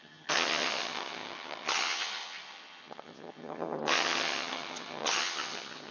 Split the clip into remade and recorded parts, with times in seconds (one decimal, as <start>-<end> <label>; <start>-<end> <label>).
0.0-5.9 remade